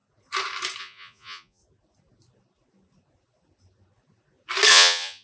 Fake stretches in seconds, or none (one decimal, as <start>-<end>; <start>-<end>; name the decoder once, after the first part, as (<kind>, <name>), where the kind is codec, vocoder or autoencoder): 0.8-1.6 (vocoder, Vocos); 4.7-5.2